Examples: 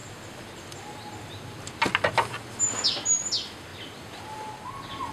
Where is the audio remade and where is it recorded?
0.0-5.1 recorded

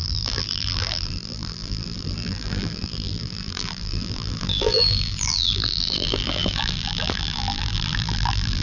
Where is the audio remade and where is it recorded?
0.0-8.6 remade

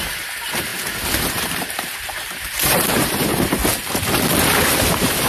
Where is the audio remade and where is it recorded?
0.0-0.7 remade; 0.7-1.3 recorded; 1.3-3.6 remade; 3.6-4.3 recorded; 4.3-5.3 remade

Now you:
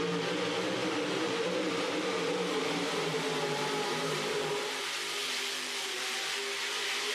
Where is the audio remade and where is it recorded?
0.0-0.8 recorded; 0.8-4.8 remade; 4.8-7.1 recorded